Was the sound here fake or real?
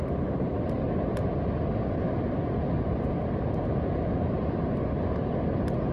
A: real